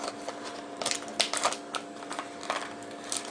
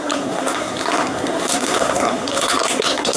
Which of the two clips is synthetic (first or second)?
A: second